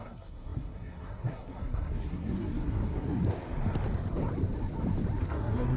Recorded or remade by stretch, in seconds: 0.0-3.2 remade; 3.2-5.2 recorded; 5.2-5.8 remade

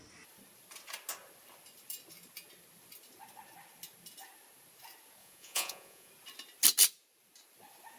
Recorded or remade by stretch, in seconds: 0.0-5.2 recorded; 5.2-6.1 remade; 6.1-8.0 recorded

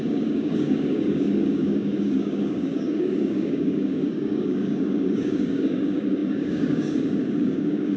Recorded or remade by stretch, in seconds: 0.0-8.0 remade

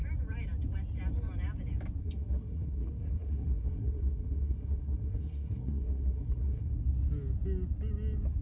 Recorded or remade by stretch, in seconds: 0.0-2.0 recorded; 2.0-6.7 remade; 6.7-8.4 recorded

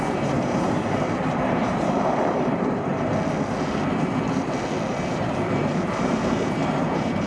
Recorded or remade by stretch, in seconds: 0.0-2.9 remade; 2.9-4.9 recorded; 4.9-7.3 remade